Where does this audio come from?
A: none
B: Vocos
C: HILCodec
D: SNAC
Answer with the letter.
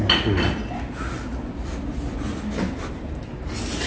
A